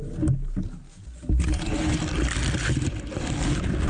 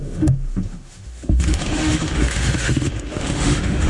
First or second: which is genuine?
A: first